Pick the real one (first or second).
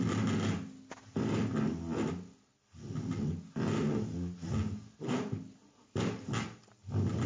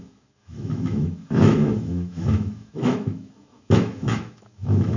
first